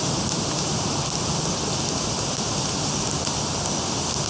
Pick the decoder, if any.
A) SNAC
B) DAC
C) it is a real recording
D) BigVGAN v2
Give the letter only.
D